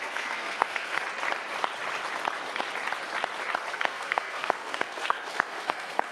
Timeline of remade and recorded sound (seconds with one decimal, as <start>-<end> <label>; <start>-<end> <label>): 0.0-1.0 remade; 1.0-3.7 recorded; 3.7-6.1 remade